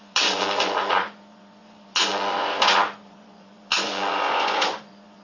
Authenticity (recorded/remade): remade